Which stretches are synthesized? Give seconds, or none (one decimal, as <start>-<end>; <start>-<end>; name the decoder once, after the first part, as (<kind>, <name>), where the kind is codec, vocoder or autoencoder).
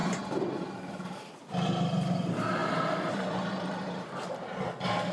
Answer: 0.0-1.4 (vocoder, BigVGAN v2); 2.6-4.3